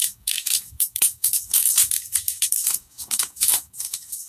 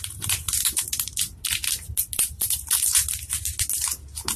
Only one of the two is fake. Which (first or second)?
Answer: first